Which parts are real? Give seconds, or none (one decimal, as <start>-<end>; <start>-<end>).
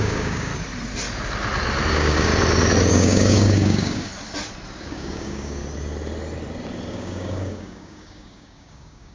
0.5-1.9; 2.3-2.9; 4.1-4.8; 5.6-6.9